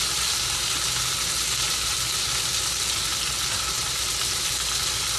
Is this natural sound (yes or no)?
yes